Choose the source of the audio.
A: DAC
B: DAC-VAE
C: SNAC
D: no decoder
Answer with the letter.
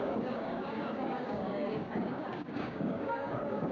A